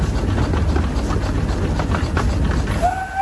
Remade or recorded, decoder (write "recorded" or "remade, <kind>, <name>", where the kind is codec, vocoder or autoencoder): recorded